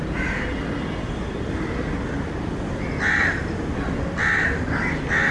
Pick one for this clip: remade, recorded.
recorded